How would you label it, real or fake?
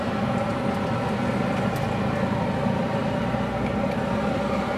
real